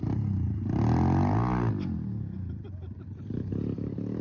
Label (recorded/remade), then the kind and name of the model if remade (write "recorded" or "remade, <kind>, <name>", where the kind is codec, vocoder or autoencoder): recorded